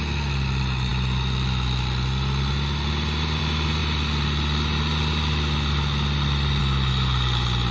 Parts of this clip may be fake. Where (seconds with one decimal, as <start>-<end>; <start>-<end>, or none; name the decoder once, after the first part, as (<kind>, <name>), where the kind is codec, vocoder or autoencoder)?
none